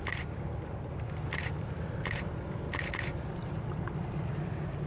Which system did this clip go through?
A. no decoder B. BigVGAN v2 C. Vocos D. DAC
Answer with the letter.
A